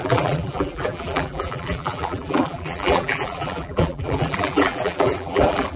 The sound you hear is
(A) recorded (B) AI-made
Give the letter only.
B